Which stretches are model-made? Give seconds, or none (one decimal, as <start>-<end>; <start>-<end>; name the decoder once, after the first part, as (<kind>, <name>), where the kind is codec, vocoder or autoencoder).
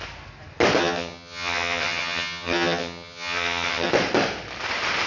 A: 0.8-3.9 (vocoder, HiFi-GAN)